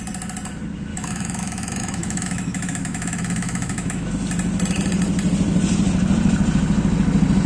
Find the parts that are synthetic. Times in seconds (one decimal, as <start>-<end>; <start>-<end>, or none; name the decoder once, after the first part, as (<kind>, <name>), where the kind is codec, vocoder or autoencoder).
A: 0.9-4.1 (autoencoder, DAC-VAE)